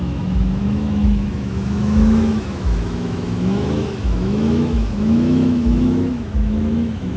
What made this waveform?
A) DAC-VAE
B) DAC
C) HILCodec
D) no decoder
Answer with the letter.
A